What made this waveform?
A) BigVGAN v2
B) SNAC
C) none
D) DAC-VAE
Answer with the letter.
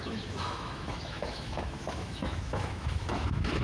D